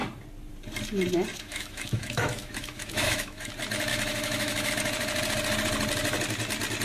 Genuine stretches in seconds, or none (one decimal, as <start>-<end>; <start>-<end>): 0.0-1.3; 3.5-3.9; 4.7-6.8